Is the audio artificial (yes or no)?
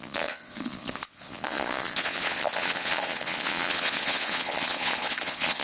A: yes